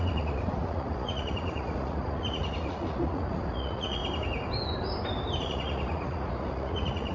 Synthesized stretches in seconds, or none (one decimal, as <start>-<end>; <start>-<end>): 0.0-4.0; 5.4-7.1